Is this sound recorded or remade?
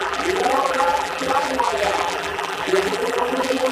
remade